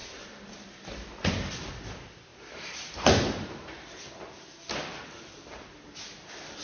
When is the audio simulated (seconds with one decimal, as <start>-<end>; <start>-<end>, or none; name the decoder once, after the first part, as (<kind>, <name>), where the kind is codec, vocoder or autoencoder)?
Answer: 0.0-1.7 (vocoder, BigVGAN v2); 2.3-4.1